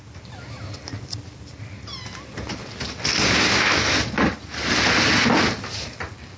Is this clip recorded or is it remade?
recorded